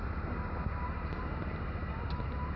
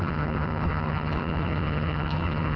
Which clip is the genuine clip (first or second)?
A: first